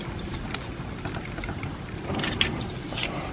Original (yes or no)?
yes